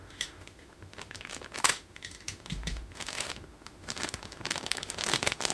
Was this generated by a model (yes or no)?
yes